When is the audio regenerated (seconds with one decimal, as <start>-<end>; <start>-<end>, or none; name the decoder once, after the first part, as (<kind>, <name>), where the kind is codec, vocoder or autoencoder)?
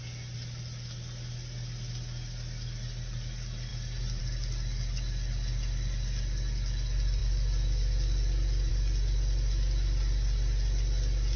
none